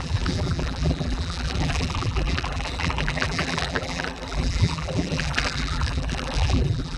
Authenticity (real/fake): fake